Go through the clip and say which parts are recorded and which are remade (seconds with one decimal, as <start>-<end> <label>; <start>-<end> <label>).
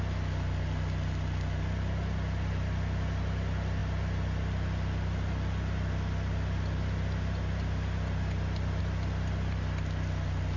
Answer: 0.0-10.6 recorded